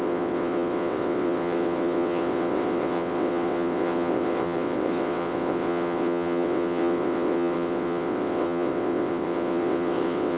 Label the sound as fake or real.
fake